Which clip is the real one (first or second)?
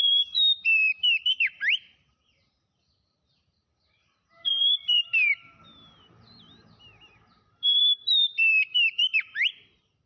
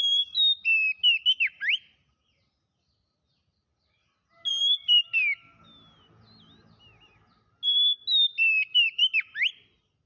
second